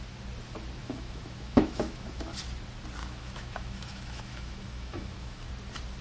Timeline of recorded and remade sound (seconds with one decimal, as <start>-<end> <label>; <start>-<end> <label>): 0.0-0.8 recorded; 0.8-2.3 remade; 2.3-3.0 recorded; 3.0-5.5 remade; 5.5-6.0 recorded